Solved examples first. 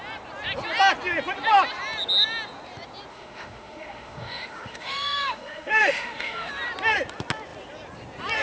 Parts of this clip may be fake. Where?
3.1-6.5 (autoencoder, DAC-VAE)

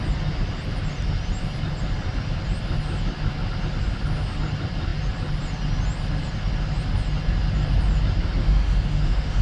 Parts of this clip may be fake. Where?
8.4-9.4 (autoencoder, DAC-VAE)

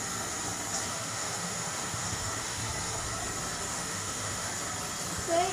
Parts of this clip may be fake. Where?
0.9-2.6 (autoencoder, DAC-VAE); 3.7-4.5

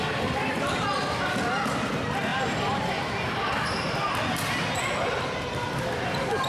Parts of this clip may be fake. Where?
none